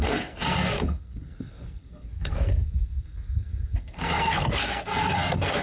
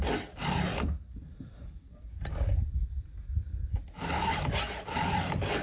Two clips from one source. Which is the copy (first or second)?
first